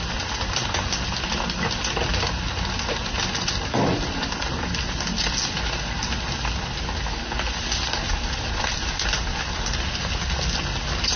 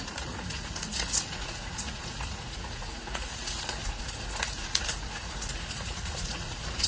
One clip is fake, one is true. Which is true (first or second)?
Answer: first